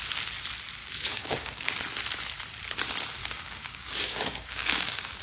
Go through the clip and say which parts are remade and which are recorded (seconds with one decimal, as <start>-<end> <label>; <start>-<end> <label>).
0.0-0.8 recorded; 0.8-1.7 remade; 1.7-3.2 recorded; 3.2-5.2 remade